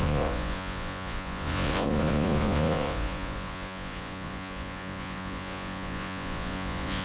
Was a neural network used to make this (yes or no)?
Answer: yes